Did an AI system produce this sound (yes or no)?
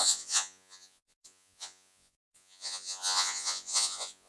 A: yes